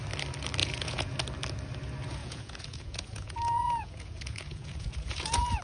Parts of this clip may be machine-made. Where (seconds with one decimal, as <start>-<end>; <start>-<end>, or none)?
0.6-1.2; 2.2-5.6